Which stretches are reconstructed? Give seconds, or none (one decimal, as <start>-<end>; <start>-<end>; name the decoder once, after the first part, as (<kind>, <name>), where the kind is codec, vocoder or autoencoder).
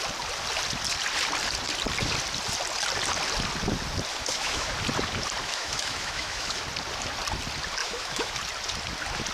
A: 4.1-4.7 (autoencoder, DAC-VAE); 5.4-6.6; 7.8-8.3